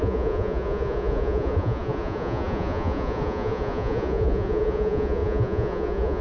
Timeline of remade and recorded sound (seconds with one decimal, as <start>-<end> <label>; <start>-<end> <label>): 0.0-6.2 remade